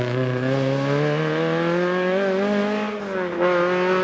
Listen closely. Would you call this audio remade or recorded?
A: recorded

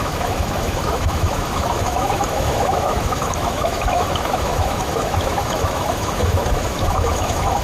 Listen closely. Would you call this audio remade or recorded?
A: remade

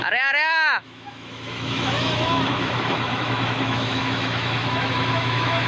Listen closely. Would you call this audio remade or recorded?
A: remade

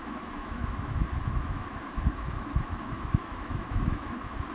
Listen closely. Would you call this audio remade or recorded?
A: remade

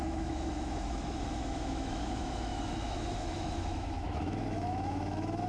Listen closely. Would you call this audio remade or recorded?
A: remade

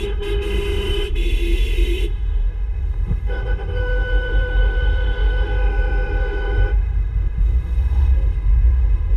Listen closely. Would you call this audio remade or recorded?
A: remade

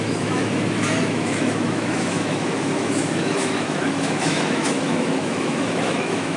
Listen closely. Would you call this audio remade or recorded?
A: remade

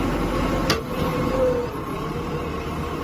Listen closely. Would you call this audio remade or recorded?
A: recorded